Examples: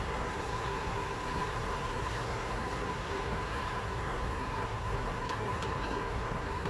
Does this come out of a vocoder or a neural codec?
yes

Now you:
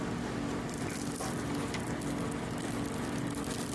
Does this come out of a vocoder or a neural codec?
no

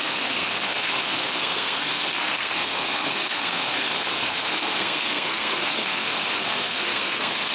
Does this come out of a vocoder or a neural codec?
yes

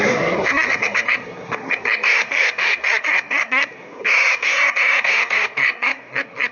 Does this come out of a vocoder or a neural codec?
yes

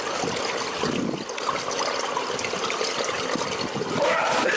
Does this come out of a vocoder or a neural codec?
no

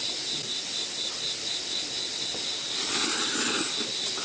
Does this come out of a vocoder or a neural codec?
no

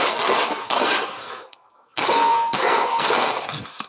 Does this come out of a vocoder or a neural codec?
yes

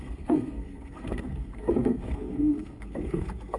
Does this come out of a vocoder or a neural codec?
yes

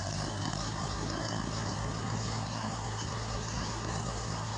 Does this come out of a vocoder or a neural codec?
yes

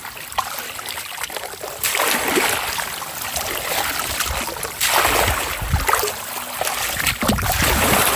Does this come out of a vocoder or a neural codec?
no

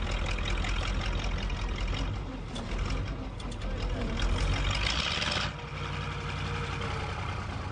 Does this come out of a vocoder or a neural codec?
no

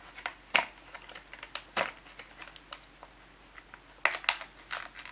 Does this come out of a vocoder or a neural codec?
no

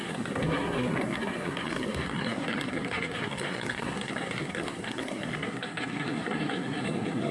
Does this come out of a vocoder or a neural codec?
yes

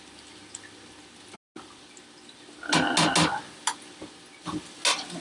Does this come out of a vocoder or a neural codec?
no